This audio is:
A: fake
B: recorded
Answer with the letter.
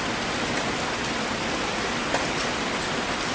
B